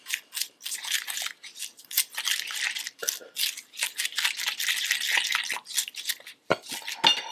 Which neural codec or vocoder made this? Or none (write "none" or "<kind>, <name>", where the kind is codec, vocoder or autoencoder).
none